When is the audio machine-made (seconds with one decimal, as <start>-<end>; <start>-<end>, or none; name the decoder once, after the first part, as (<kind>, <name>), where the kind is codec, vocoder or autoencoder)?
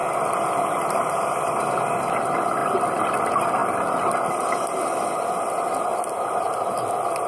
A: 0.0-1.6 (vocoder, BigVGAN v2); 2.6-3.2; 5.9-7.3